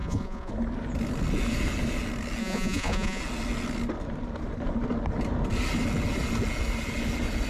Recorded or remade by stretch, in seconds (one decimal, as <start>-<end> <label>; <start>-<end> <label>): 0.0-0.5 remade; 0.5-2.4 recorded; 2.4-3.2 remade; 3.2-7.5 recorded